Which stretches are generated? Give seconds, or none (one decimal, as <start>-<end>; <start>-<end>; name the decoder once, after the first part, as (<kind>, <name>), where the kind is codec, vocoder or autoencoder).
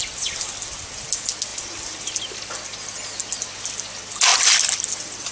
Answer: none